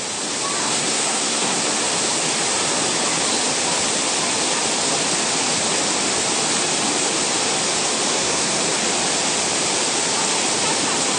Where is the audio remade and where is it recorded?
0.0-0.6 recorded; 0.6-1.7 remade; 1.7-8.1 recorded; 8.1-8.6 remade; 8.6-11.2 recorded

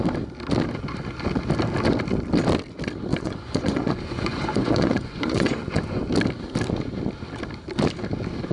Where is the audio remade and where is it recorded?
0.0-3.1 recorded; 3.1-6.1 remade; 6.1-8.5 recorded

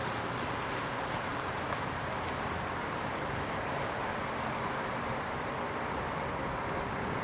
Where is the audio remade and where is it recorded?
0.0-1.3 recorded; 1.3-5.6 remade; 5.6-7.2 recorded